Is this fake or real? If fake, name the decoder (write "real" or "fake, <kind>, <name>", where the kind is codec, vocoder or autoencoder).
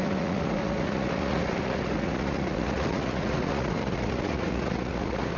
fake, vocoder, Vocos